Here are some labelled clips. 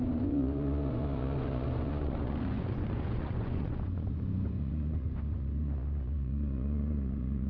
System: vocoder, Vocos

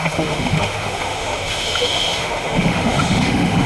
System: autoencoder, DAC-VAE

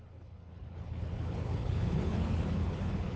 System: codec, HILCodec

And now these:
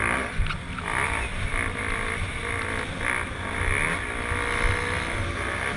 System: none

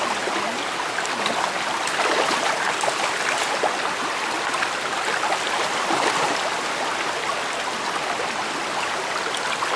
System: none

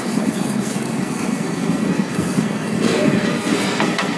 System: codec, SNAC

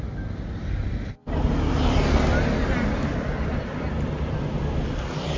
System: none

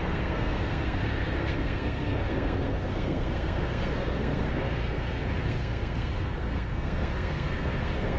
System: codec, SNAC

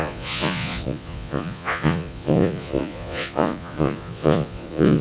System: vocoder, Vocos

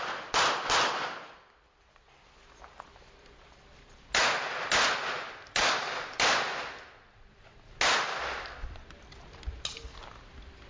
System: none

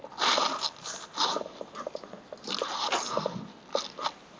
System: none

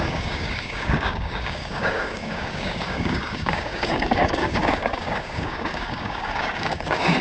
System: codec, DAC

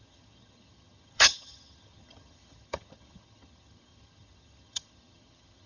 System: vocoder, HiFi-GAN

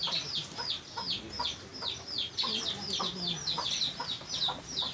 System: none